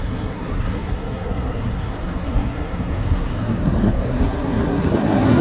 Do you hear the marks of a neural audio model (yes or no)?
yes